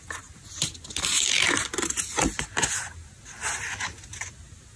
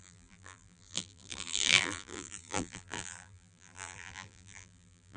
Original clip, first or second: first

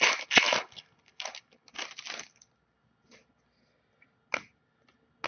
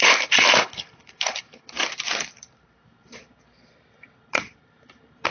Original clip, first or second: first